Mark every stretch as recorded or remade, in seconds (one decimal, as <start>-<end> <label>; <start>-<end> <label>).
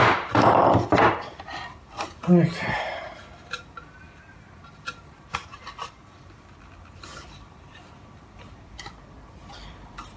0.0-2.2 remade; 2.2-3.6 recorded; 3.6-10.2 remade